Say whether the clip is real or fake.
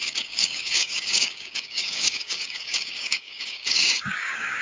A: fake